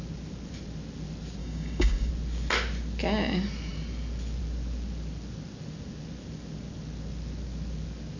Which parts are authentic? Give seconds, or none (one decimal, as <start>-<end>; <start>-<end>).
0.0-1.4; 2.1-8.2